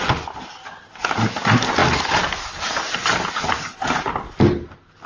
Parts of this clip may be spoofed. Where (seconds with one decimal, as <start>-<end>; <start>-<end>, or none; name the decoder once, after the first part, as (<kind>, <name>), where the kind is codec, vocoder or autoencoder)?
none